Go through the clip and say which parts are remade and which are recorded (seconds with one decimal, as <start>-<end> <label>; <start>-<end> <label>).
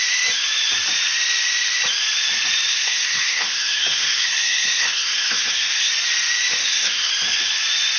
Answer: 0.0-2.7 recorded; 2.7-5.9 remade; 5.9-6.6 recorded; 6.6-7.1 remade; 7.1-8.0 recorded